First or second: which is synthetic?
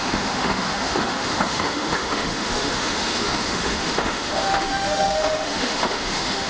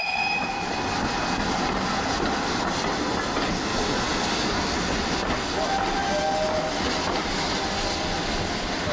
first